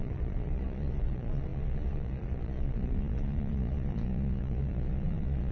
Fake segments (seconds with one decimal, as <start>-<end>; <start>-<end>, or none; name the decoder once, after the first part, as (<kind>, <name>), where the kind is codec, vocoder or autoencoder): 0.0-5.5 (vocoder, Vocos)